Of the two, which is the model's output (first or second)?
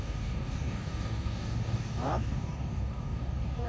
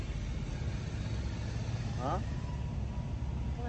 first